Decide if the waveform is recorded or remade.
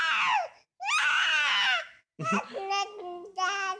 recorded